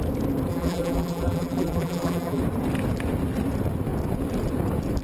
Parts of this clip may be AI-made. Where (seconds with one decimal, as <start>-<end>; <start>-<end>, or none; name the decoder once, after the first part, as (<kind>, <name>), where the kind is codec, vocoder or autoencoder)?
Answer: 0.5-2.4 (vocoder, BigVGAN v2)